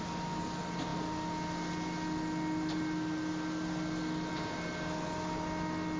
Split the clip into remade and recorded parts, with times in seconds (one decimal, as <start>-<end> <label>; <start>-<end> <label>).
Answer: 0.0-6.0 recorded